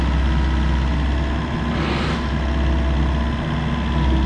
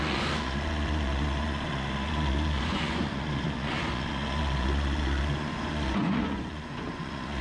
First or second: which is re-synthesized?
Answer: second